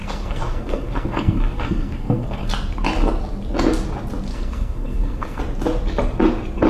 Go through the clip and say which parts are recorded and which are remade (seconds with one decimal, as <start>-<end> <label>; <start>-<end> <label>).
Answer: 0.0-2.5 remade; 2.5-4.3 recorded; 4.3-5.4 remade; 5.4-6.7 recorded